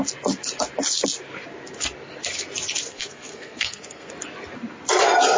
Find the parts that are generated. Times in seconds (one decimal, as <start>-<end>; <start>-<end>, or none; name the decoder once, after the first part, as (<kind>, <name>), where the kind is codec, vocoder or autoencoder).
2.9-4.1 (codec, SNAC)